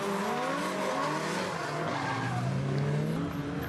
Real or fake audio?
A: real